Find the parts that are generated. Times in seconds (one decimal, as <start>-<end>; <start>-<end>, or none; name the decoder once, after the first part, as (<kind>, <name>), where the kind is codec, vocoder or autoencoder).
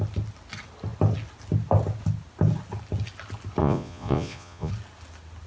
3.6-4.7 (vocoder, Vocos)